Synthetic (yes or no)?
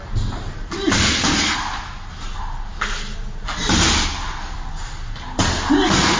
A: no